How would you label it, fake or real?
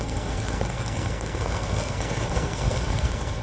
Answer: fake